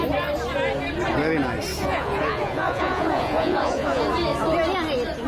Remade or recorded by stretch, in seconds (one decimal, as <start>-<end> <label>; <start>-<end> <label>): 0.0-1.7 recorded; 1.7-4.0 remade; 4.0-5.3 recorded

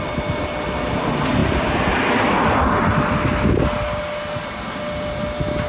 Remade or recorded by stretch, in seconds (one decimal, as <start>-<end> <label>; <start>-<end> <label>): 0.0-5.7 recorded

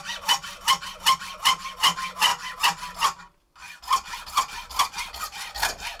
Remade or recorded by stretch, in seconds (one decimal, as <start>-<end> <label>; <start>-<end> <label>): 0.0-6.0 recorded

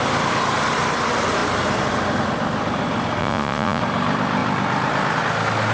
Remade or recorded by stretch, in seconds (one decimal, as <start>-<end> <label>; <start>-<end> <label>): 0.0-3.2 recorded; 3.2-3.8 remade; 3.8-5.7 recorded

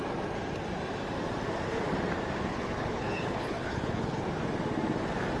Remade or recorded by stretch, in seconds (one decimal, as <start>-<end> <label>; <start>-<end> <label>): 0.0-2.5 recorded; 2.5-4.3 remade; 4.3-5.4 recorded

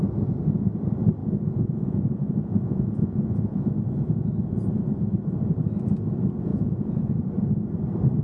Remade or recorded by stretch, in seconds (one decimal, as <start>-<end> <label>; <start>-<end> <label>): 0.0-1.2 recorded; 1.2-3.7 remade; 3.7-6.5 recorded; 6.5-7.2 remade; 7.2-8.2 recorded